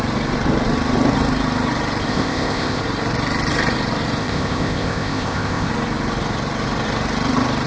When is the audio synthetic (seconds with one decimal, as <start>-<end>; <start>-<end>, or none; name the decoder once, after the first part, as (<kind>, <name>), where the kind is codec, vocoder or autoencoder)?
2.1-2.8 (codec, ZipCodec); 4.2-5.7